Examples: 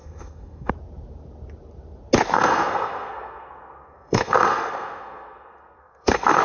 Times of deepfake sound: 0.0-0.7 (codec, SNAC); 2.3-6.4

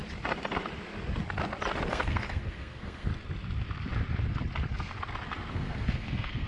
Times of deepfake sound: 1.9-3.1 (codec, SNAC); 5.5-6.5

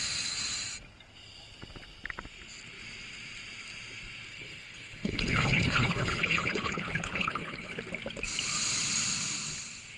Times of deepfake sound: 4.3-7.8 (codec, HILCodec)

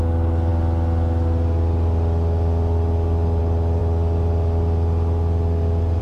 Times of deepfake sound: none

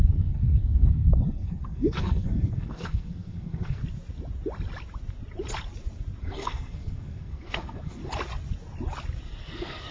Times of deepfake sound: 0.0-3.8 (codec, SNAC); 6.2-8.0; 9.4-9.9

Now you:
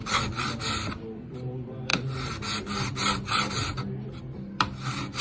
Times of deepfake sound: none

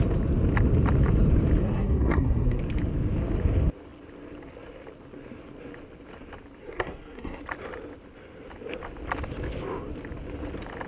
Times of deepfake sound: 1.6-2.6 (codec, SNAC); 6.6-7.4

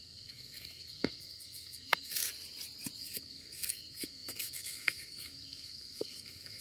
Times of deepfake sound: 0.0-2.2 (codec, SNAC); 3.0-6.6